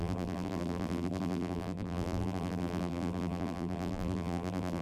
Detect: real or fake fake